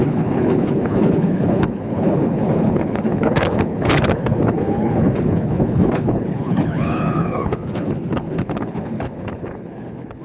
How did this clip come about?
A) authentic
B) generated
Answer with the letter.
B